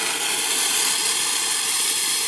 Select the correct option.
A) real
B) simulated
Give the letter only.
A